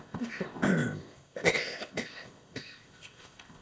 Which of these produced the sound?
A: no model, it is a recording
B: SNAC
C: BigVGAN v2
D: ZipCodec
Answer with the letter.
D